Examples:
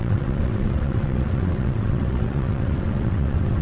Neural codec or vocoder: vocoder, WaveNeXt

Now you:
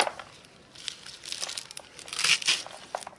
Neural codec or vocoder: none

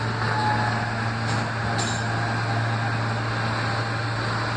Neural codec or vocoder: none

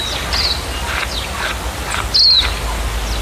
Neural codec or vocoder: none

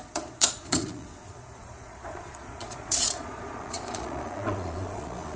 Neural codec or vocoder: vocoder, Vocos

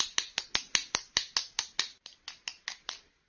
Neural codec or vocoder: none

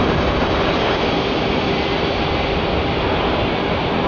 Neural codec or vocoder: none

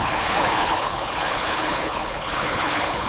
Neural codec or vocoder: codec, HILCodec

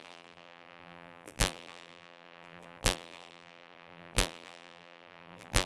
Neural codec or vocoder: vocoder, BigVGAN v2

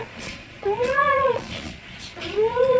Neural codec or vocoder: vocoder, Vocos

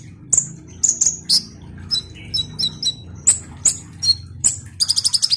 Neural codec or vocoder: none